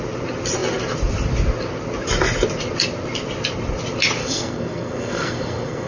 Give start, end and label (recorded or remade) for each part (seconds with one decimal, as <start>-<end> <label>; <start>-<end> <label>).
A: 0.0-4.2 recorded; 4.2-5.9 remade